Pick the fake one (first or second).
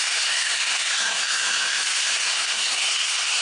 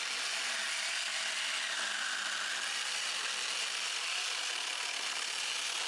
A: first